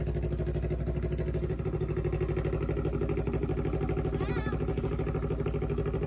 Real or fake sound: real